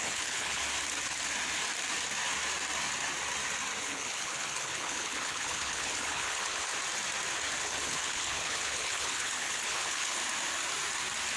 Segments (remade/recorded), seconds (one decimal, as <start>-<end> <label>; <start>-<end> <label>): 0.0-0.6 remade; 0.6-3.8 recorded; 3.8-6.7 remade; 6.7-7.6 recorded; 7.6-10.2 remade; 10.2-11.4 recorded